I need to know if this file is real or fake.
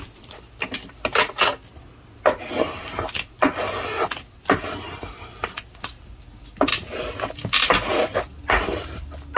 real